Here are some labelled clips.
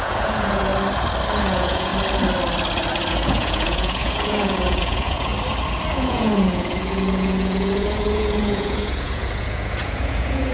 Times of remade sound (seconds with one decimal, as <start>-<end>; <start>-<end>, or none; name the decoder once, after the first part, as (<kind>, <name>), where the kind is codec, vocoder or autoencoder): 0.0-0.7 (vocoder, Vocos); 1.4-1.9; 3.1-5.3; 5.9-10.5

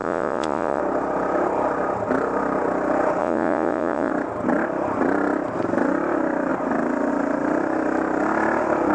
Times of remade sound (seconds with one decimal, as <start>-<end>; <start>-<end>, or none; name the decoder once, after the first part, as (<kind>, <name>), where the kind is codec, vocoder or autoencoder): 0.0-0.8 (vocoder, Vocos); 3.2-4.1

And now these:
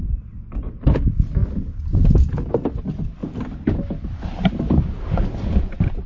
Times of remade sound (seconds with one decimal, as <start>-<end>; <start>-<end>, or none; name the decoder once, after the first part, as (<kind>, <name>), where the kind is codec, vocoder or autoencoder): none

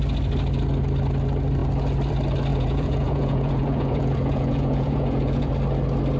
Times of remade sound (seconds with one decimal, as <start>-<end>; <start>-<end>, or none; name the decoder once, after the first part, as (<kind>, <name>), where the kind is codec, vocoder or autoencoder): 2.5-5.5 (vocoder, Vocos)

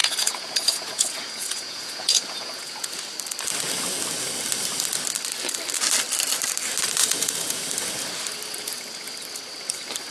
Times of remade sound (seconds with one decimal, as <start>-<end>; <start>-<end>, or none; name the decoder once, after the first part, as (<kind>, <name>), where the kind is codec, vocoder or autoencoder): 0.0-3.0 (vocoder, Vocos); 7.0-7.7

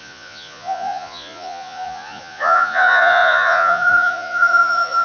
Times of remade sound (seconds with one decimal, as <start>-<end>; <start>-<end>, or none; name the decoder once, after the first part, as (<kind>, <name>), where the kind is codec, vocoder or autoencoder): 0.0-5.0 (vocoder, Vocos)